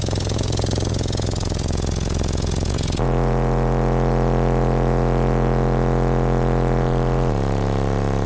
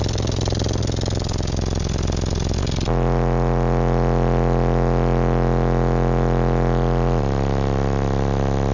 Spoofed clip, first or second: first